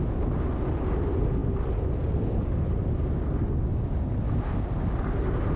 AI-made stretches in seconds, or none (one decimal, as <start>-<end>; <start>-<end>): none